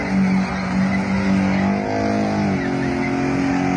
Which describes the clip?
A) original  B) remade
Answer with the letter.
A